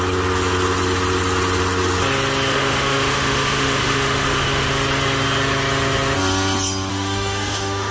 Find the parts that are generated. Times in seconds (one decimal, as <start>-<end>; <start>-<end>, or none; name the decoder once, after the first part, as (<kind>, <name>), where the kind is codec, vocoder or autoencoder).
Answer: 2.5-4.7 (autoencoder, DAC-VAE); 6.9-7.9